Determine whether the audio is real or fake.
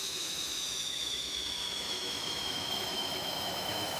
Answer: fake